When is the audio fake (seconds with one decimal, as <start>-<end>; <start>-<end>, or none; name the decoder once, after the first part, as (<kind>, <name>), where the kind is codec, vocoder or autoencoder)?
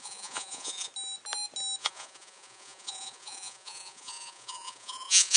0.0-0.9 (vocoder, Vocos); 1.8-5.4